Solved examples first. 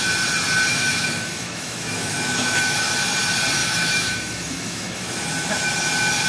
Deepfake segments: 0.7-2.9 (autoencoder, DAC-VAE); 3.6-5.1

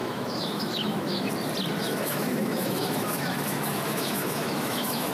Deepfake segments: 0.0-1.3 (autoencoder, DAC-VAE); 1.8-5.1

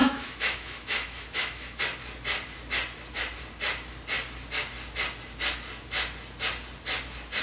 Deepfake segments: 0.0-1.8 (autoencoder, DAC-VAE)